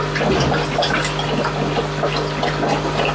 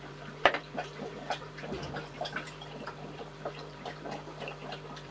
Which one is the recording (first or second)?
first